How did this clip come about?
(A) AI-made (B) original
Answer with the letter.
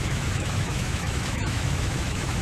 A